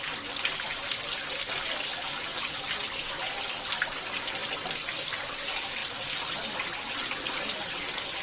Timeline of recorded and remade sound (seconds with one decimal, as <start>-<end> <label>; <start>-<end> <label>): 0.0-8.2 recorded